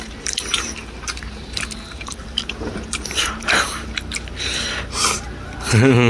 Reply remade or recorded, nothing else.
remade